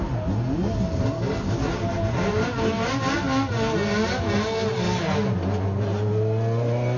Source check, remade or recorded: recorded